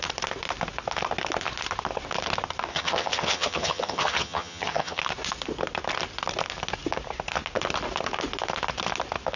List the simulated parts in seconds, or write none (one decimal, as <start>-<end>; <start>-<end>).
2.7-5.0